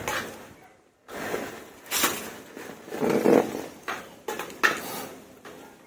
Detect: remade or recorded recorded